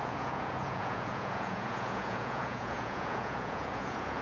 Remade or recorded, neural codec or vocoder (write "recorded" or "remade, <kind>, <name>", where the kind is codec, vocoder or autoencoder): remade, vocoder, Vocos